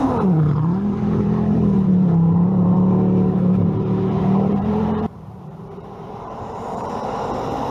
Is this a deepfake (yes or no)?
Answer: yes